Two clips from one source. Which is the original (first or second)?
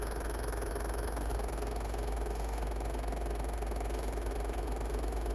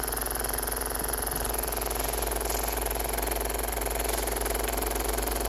second